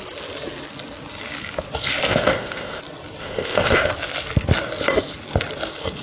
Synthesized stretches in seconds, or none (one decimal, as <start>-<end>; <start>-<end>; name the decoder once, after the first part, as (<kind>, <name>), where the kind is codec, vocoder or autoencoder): 2.1-2.8 (codec, ZipCodec); 3.2-3.9

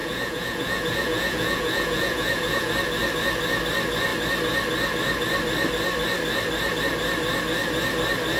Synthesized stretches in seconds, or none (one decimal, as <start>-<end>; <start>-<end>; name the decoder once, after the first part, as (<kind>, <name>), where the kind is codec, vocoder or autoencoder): 0.0-2.7 (vocoder, Vocos)